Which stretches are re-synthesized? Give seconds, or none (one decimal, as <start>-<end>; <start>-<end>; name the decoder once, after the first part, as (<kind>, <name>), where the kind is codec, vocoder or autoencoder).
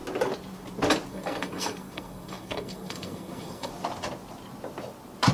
1.1-3.7 (codec, SNAC)